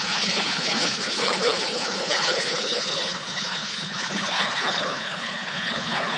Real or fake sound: fake